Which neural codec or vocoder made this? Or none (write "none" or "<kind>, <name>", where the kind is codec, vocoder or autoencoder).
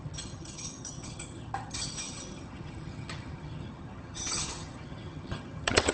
vocoder, HiFi-GAN